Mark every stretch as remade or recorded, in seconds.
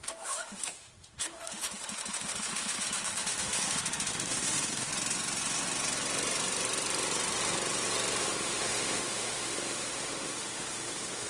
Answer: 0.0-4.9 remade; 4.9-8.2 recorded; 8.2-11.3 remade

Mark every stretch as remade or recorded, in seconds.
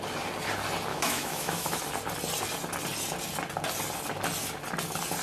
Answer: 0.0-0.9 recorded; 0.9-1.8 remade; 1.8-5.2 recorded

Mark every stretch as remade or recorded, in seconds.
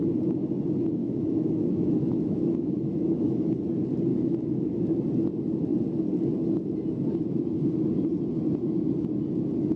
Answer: 0.0-1.0 recorded; 1.0-3.5 remade; 3.5-4.1 recorded; 4.1-4.8 remade; 4.8-9.8 recorded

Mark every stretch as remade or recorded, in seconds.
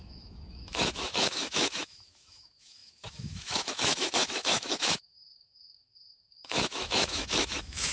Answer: 0.0-7.9 remade